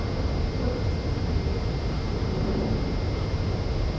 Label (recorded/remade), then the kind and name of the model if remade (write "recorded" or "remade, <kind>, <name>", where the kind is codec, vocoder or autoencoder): recorded